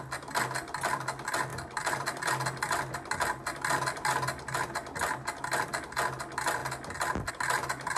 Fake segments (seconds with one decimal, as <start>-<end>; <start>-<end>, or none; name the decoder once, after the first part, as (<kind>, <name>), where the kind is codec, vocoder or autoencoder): none